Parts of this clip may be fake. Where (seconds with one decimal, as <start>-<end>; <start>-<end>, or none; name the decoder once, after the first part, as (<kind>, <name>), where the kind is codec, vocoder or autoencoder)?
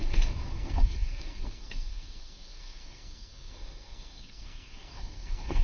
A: 0.0-5.6 (codec, SNAC)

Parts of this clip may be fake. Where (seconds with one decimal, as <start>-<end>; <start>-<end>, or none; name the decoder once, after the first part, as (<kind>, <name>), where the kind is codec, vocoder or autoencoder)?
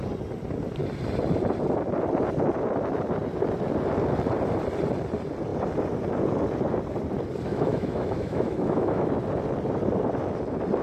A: 7.5-9.1 (autoencoder, DAC-VAE)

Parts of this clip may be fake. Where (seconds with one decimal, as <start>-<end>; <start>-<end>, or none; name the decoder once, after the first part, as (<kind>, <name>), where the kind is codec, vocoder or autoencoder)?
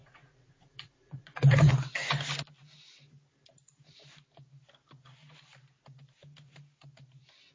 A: 0.0-1.7 (vocoder, Vocos)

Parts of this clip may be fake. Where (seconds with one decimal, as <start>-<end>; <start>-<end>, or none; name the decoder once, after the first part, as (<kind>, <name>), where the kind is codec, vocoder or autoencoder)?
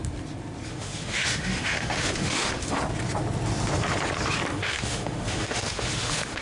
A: 0.7-2.8 (autoencoder, DAC-VAE); 4.5-6.4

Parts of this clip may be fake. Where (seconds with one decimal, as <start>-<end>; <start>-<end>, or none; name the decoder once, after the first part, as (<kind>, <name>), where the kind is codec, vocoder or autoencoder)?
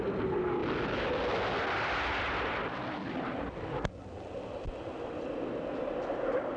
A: none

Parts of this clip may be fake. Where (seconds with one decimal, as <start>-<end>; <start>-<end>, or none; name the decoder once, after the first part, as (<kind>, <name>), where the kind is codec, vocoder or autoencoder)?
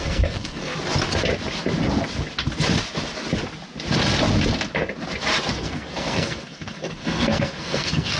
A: 0.0-0.7 (codec, SNAC); 5.5-8.2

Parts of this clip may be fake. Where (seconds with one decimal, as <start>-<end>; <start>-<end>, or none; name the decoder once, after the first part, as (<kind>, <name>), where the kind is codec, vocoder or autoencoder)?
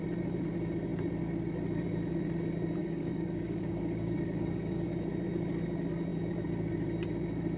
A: 2.8-4.9 (codec, DAC)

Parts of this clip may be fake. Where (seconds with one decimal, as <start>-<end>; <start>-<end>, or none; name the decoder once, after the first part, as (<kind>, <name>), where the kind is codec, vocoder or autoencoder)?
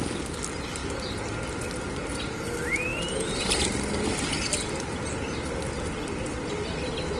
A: none